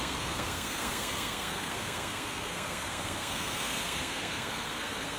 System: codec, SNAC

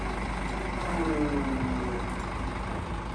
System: none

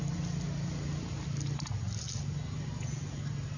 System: none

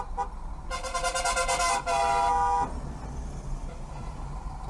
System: none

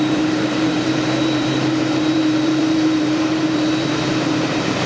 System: vocoder, BigVGAN v2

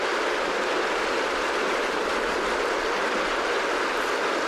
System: none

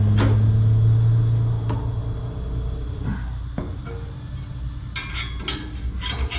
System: none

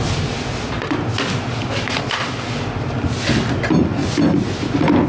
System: none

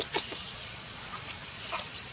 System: vocoder, Vocos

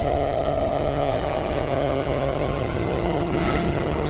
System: vocoder, HiFi-GAN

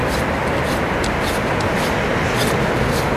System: none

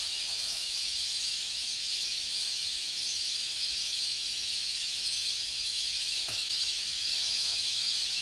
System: autoencoder, DAC-VAE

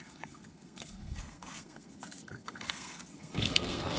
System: codec, SNAC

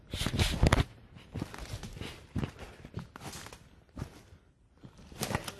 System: none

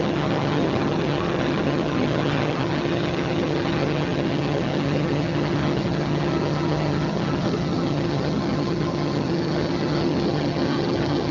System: vocoder, HiFi-GAN